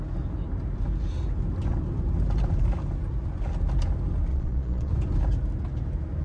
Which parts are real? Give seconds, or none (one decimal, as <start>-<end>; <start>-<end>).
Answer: 0.0-4.3; 4.9-6.2